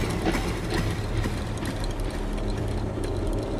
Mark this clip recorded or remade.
recorded